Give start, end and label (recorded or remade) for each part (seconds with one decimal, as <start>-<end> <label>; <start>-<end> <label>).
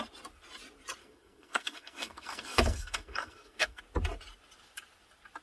0.0-1.0 recorded; 1.0-3.8 remade; 3.8-5.4 recorded